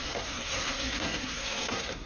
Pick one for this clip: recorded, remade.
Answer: remade